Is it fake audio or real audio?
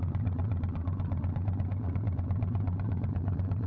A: fake